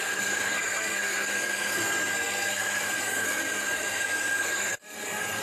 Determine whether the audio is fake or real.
fake